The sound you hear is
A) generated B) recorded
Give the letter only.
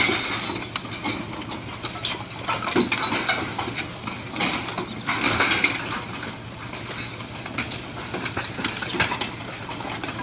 B